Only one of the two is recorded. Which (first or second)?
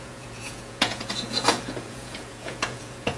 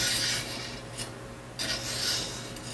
second